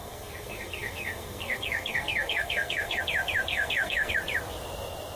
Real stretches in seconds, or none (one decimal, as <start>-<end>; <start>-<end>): 3.0-3.5; 4.1-5.2